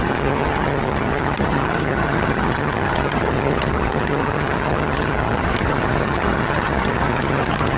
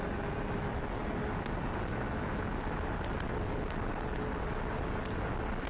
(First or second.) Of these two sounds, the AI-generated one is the first